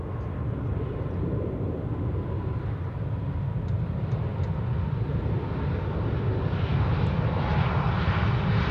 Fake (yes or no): no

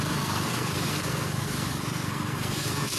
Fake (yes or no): yes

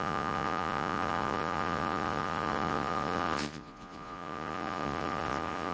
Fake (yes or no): yes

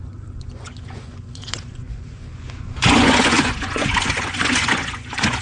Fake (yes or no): yes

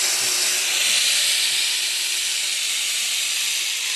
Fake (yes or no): yes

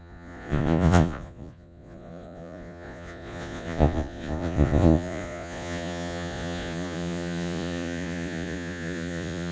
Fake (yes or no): yes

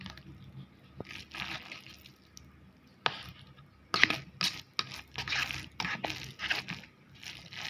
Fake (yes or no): no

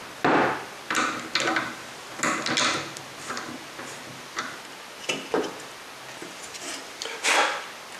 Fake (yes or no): no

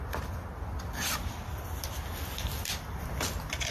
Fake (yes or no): yes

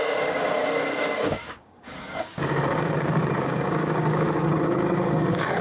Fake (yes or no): yes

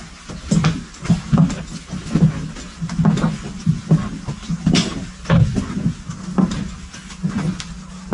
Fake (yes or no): no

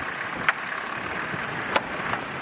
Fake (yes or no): no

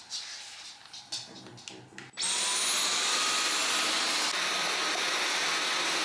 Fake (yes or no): no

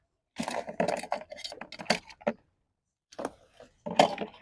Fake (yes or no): no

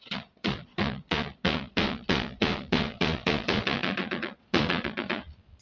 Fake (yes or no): yes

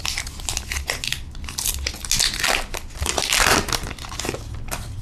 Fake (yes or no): no